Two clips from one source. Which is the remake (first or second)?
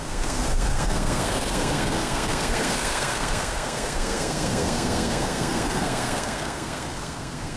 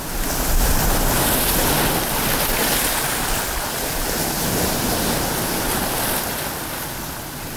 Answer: first